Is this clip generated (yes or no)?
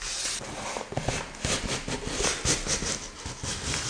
no